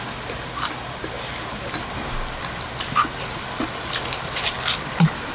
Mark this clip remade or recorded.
recorded